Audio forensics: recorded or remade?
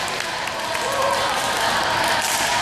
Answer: recorded